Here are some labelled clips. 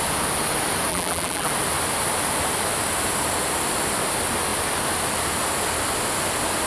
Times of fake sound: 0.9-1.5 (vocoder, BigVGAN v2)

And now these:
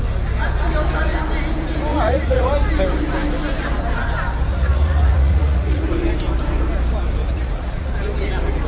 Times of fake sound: 1.9-2.5 (vocoder, Vocos); 4.5-5.9; 7.2-7.9

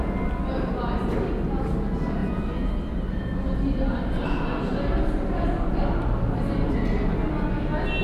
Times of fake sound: none

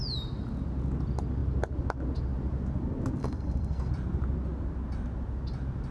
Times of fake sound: 3.2-3.9 (codec, SNAC)